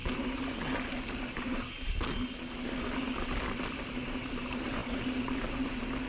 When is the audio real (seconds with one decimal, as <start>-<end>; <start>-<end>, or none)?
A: 0.0-6.1